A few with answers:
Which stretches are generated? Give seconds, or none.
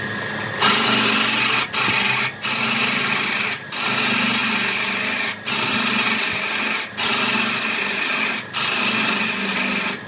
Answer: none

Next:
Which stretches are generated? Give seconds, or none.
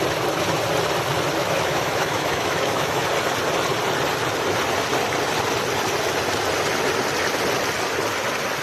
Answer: 1.4-3.1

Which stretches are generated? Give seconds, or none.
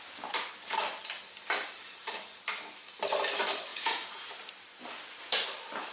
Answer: 3.7-4.2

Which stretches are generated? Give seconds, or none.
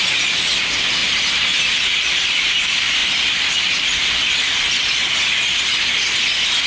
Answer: none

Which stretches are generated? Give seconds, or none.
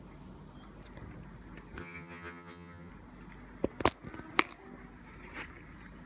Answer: 1.8-2.9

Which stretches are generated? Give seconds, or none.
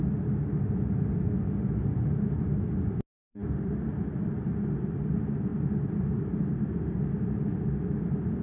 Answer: none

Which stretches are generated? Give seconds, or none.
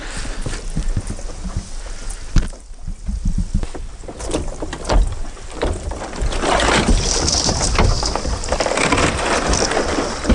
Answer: none